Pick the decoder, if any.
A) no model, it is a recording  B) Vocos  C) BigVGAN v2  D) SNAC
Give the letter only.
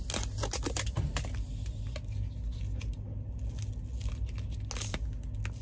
A